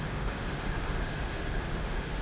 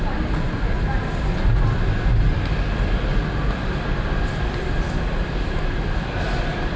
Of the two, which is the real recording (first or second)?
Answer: second